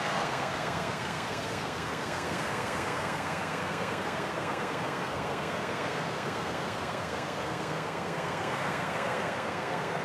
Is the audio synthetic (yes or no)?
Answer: yes